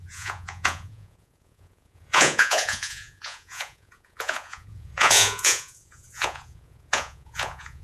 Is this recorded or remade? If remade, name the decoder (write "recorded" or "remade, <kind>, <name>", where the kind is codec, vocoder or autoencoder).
remade, vocoder, Vocos